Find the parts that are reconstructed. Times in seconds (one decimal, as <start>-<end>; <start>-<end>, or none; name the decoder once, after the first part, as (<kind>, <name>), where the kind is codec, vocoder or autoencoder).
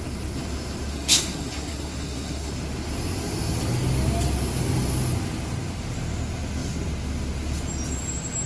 0.9-2.5 (codec, SNAC)